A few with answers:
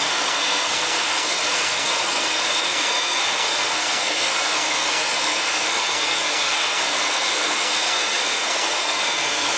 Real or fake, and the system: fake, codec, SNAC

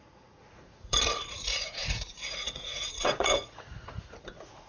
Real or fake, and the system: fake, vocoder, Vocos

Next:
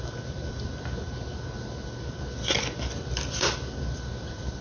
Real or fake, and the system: fake, vocoder, BigVGAN v2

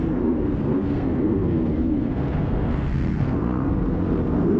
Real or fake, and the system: fake, codec, SNAC